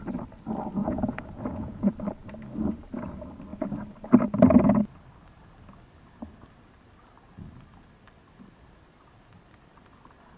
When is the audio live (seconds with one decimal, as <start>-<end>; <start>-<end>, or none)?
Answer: 0.0-0.8; 1.9-10.4

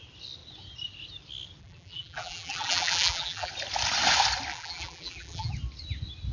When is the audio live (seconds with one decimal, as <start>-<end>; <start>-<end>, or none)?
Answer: 0.0-1.6; 3.5-4.5; 5.5-6.3

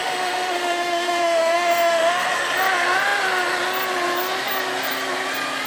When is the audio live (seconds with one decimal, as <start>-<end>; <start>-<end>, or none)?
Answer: 2.3-5.7

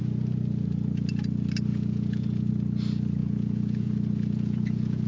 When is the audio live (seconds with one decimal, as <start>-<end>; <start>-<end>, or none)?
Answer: 0.0-1.7; 2.5-3.2

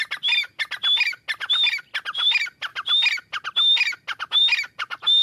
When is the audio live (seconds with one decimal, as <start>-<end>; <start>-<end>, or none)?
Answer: 0.0-5.2

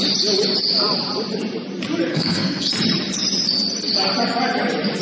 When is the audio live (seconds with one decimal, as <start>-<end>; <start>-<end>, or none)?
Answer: 0.0-2.1; 2.7-5.0